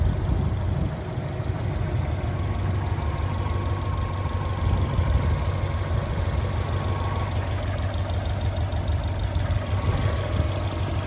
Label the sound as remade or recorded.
recorded